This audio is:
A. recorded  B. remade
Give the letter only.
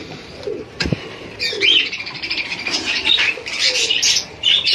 B